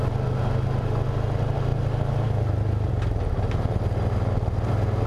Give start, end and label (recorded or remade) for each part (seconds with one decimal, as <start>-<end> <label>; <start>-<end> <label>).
0.0-5.1 recorded